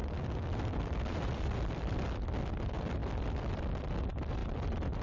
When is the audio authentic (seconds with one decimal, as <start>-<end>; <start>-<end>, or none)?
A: 1.9-3.0; 4.0-4.4